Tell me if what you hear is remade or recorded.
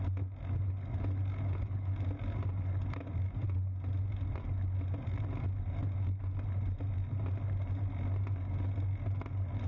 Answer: recorded